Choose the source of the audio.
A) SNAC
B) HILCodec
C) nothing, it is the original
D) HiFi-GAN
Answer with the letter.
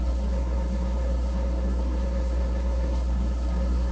A